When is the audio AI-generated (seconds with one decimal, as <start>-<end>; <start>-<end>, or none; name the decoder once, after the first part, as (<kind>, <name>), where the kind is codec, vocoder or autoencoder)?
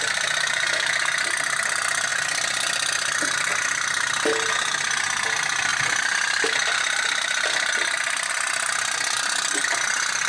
2.1-3.5 (vocoder, BigVGAN v2); 5.7-8.3